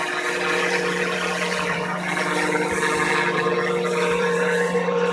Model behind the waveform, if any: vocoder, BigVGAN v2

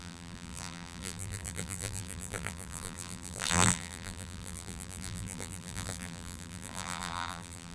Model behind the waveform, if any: vocoder, BigVGAN v2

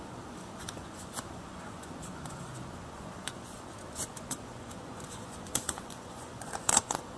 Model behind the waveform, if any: vocoder, Vocos